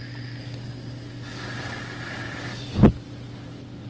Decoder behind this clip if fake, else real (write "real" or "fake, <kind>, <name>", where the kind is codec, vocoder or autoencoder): real